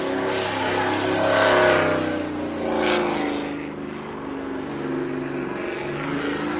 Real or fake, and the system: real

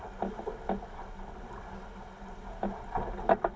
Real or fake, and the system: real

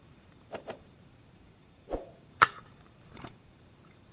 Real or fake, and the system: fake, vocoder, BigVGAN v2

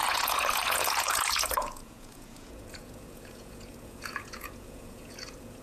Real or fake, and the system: fake, vocoder, Vocos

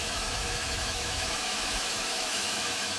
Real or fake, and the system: fake, autoencoder, DAC-VAE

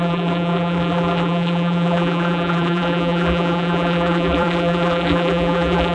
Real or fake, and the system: fake, vocoder, BigVGAN v2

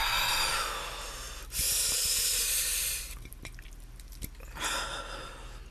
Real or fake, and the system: real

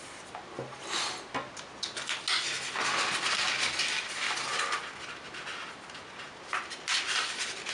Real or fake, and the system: real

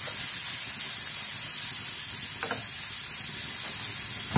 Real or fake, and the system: real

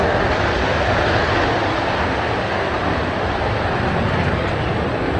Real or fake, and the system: real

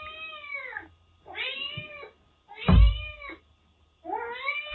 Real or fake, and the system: real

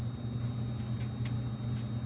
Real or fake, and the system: real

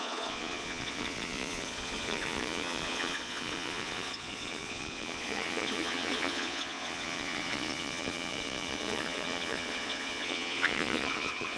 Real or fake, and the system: fake, vocoder, Vocos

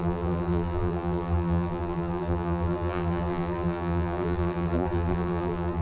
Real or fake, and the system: fake, vocoder, BigVGAN v2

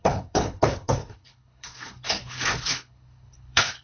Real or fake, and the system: fake, codec, HILCodec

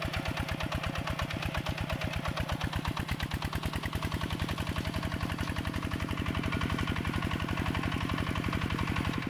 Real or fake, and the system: real